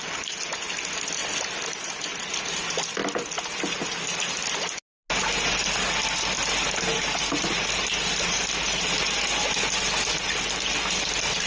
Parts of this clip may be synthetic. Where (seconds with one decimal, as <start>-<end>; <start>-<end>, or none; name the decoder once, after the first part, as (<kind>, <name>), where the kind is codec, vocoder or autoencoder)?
none